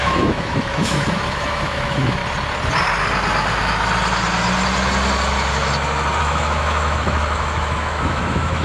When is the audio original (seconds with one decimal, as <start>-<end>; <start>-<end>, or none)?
2.2-6.2